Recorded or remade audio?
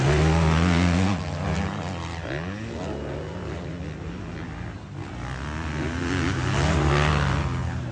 recorded